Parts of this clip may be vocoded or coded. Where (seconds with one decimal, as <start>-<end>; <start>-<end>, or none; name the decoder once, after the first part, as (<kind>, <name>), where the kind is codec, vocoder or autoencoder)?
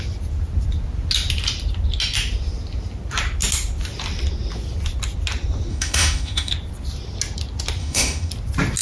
5.7-6.5 (autoencoder, DAC-VAE); 7.8-8.3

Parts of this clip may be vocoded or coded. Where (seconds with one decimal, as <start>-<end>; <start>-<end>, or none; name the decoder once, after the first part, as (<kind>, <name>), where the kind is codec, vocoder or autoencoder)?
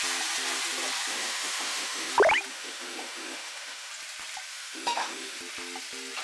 1.1-2.1 (autoencoder, DAC-VAE); 2.5-3.9; 4.5-5.4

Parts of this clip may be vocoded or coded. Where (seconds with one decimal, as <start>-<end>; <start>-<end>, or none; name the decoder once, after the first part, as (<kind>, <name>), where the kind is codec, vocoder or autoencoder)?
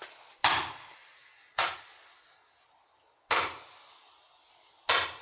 none